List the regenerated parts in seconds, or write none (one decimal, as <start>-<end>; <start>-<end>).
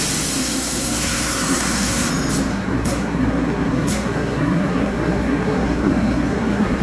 0.4-2.1; 2.5-6.8